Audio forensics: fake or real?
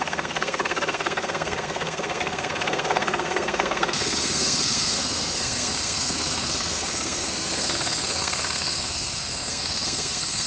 fake